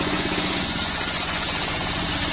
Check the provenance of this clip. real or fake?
fake